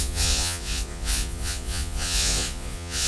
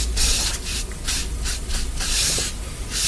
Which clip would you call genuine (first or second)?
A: second